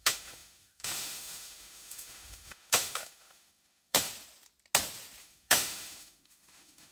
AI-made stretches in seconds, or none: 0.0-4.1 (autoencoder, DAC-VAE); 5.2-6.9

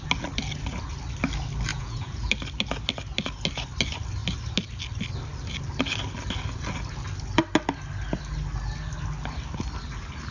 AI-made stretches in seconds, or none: 1.7-2.3 (vocoder, Vocos)

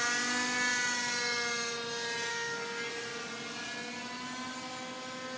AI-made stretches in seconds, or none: 2.3-2.9 (codec, SNAC)

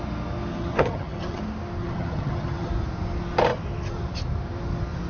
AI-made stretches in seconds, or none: 0.5-1.4 (vocoder, HiFi-GAN); 1.8-2.7

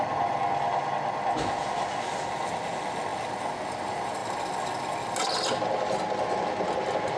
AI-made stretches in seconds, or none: none

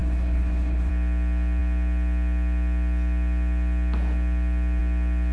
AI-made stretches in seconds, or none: 0.0-0.9 (codec, HILCodec)

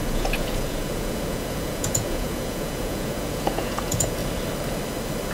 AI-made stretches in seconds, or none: 0.0-4.2 (vocoder, Vocos)

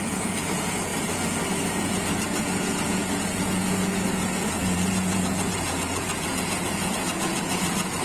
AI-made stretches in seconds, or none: 0.0-0.9 (vocoder, Vocos); 1.7-8.0